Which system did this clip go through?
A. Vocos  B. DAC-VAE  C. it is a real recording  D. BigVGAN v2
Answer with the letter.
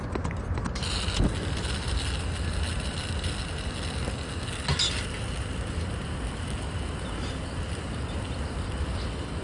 C